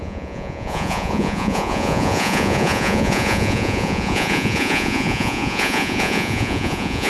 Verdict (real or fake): fake